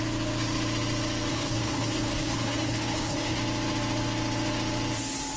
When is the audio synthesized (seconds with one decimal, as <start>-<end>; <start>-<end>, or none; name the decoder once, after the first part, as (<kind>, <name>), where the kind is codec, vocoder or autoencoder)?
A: 1.3-3.4 (codec, HILCodec)